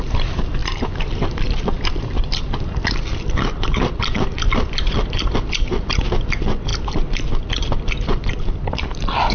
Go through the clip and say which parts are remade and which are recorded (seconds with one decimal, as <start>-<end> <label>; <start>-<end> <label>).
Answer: 0.0-6.7 remade; 6.7-8.5 recorded; 8.5-9.3 remade

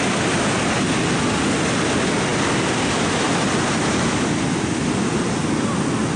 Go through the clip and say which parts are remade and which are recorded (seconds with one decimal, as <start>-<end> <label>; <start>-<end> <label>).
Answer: 0.0-6.2 recorded

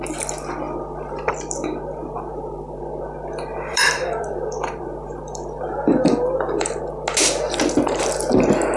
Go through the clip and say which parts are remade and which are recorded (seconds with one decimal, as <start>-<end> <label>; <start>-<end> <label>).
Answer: 0.0-2.0 recorded; 2.0-2.8 remade; 2.8-3.5 recorded; 3.5-6.8 remade; 6.8-8.8 recorded

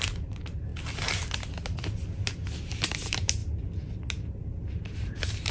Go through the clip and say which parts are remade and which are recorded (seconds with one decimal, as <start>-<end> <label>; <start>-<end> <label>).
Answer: 0.0-0.7 remade; 0.7-2.3 recorded; 2.3-3.4 remade; 3.4-4.3 recorded; 4.3-5.5 remade

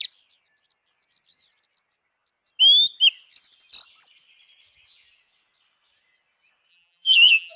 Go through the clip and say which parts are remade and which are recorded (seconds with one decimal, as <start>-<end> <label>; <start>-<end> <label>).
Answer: 0.0-6.7 recorded; 6.7-7.6 remade

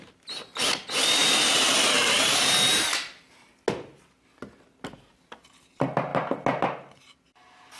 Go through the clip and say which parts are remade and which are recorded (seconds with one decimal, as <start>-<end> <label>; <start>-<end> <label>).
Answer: 0.0-7.8 recorded

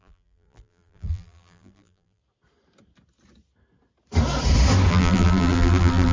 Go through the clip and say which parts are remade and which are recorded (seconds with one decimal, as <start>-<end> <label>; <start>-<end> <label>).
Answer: 0.0-2.2 remade; 2.2-4.9 recorded; 4.9-6.1 remade